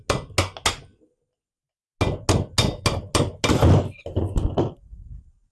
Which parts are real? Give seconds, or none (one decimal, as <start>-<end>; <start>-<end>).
0.0-5.5